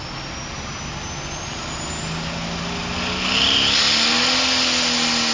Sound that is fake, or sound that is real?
real